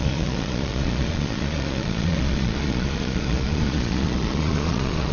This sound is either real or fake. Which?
fake